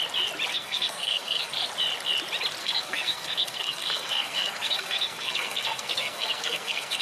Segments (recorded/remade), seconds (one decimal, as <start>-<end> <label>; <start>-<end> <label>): 0.0-0.5 recorded; 0.5-1.5 remade; 1.5-2.6 recorded; 2.6-7.0 remade